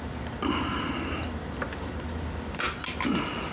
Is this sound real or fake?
real